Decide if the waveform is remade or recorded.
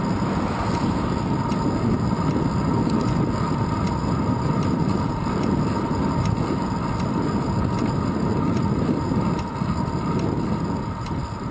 recorded